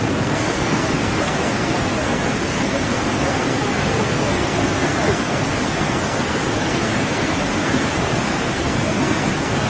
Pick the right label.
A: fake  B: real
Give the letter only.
A